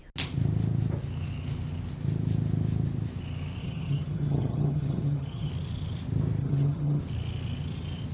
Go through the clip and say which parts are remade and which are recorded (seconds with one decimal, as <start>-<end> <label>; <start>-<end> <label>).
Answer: 0.0-3.6 recorded; 3.6-5.5 remade; 5.5-6.4 recorded; 6.4-7.0 remade; 7.0-8.1 recorded